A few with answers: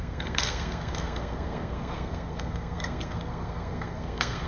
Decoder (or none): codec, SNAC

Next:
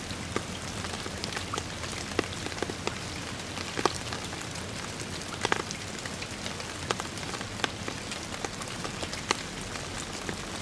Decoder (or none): none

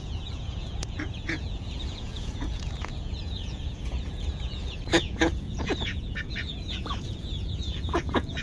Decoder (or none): vocoder, Vocos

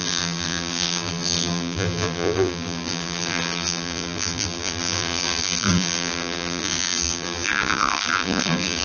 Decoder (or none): vocoder, BigVGAN v2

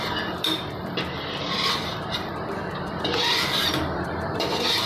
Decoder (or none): vocoder, BigVGAN v2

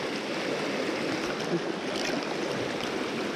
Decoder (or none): none